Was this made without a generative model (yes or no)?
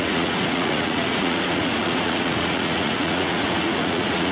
no